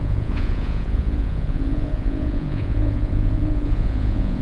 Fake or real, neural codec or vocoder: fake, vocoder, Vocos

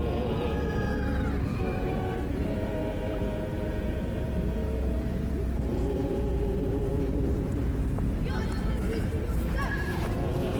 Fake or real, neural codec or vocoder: fake, vocoder, Vocos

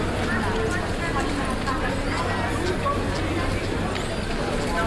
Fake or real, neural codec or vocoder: real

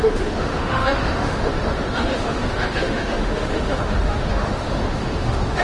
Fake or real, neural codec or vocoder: fake, autoencoder, DAC-VAE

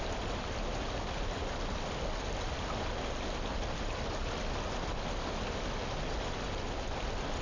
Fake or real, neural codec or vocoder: real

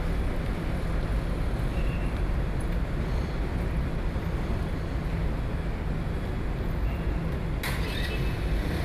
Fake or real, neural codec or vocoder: real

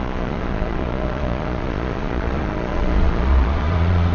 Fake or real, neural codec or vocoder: fake, vocoder, Vocos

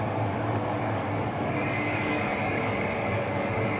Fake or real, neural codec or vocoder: fake, codec, DAC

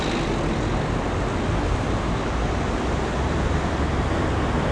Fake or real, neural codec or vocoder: real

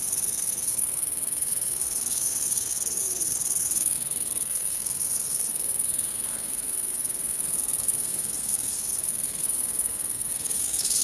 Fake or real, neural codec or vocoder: fake, codec, SNAC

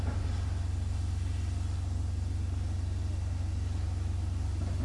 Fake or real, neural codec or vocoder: real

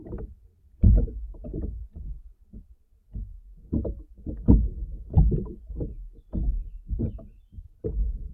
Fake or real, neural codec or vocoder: real